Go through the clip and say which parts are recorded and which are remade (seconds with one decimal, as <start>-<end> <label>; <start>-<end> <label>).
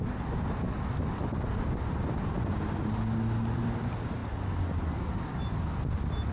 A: 0.0-6.3 recorded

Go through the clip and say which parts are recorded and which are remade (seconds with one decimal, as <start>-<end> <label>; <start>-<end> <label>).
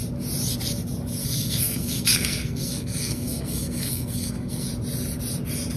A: 0.0-1.2 recorded; 1.2-4.7 remade; 4.7-5.8 recorded